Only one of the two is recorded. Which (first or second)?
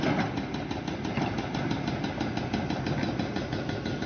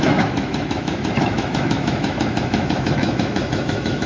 first